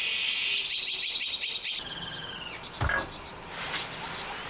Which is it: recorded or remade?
recorded